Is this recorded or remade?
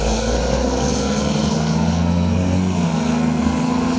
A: remade